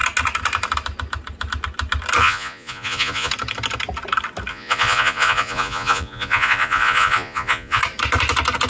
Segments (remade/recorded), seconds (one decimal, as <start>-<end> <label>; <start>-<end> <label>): 0.0-2.2 recorded; 2.2-3.3 remade; 3.3-4.5 recorded; 4.5-7.8 remade; 7.8-8.7 recorded